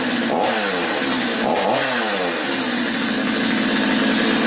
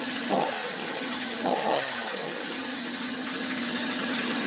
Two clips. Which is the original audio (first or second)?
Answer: first